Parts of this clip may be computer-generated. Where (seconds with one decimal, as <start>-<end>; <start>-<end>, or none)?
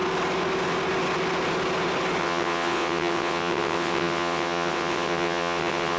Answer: 2.2-6.0